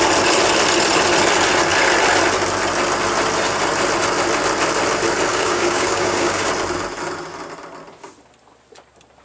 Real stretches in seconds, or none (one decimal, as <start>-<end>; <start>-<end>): 0.0-5.3; 6.5-9.2